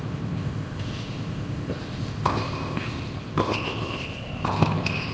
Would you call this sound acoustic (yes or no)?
no